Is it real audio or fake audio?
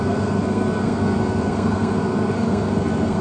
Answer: fake